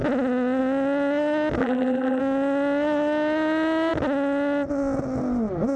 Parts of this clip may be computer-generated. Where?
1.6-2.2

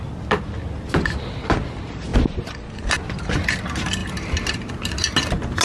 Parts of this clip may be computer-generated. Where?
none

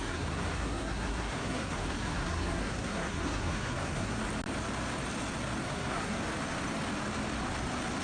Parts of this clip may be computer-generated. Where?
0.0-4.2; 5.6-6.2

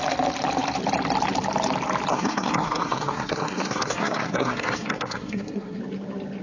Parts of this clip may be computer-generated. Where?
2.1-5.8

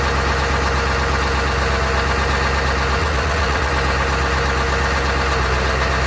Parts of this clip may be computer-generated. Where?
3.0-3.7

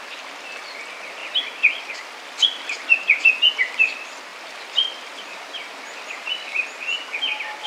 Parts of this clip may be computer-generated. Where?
none

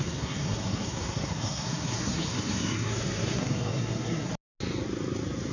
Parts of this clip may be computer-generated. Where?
0.0-4.3

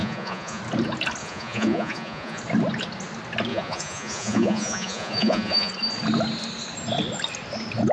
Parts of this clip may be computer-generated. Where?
0.0-0.6; 1.2-2.4; 3.5-5.7